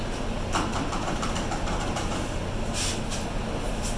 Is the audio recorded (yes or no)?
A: yes